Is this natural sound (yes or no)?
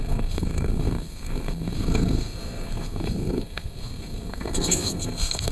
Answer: no